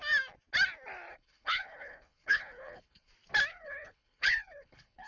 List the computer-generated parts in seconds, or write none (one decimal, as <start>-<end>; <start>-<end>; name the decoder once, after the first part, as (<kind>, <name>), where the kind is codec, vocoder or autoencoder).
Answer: 1.1-3.1 (codec, HILCodec); 3.5-5.1